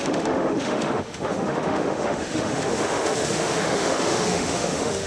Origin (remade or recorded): remade